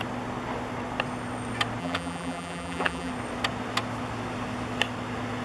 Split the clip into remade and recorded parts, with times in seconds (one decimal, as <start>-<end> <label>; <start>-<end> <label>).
0.0-1.8 recorded; 1.8-3.1 remade; 3.1-5.4 recorded